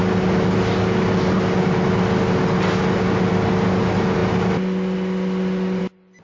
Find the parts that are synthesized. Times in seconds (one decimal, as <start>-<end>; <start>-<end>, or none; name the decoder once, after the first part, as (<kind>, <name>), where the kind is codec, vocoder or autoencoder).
none